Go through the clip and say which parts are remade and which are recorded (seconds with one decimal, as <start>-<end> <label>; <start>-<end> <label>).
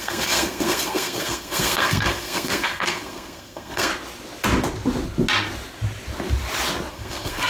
0.0-3.9 remade; 3.9-6.9 recorded; 6.9-7.5 remade